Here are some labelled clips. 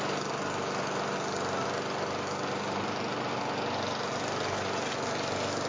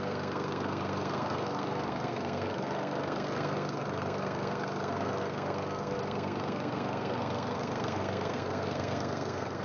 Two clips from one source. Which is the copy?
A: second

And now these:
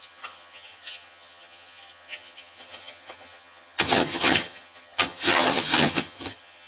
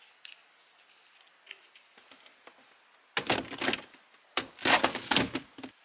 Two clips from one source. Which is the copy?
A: first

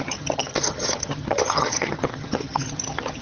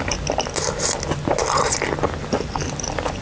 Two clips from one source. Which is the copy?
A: first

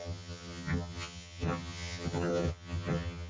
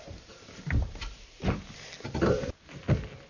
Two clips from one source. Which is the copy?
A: first